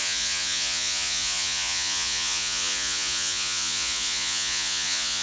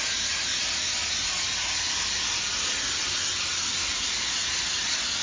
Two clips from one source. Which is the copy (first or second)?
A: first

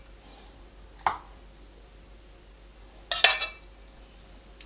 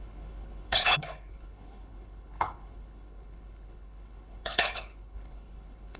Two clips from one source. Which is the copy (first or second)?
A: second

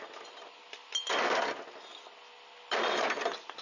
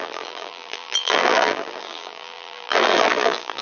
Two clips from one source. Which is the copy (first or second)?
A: second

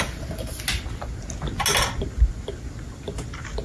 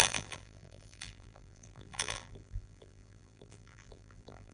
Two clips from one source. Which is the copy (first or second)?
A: second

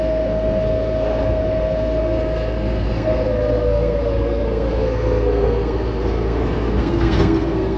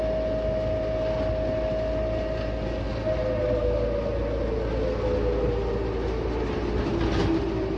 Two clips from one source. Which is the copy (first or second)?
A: first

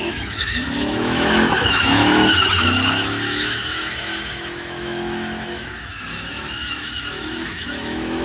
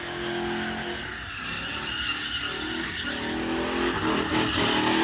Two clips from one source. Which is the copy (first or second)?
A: first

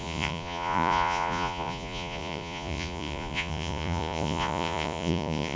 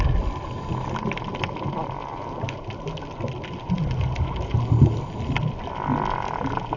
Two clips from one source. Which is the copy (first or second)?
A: first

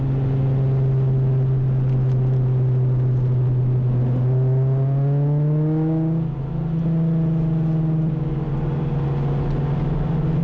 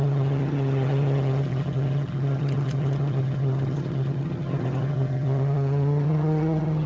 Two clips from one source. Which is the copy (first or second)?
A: second